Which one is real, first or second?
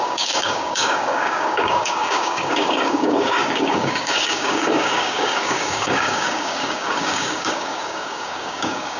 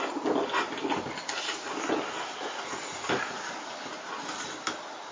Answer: second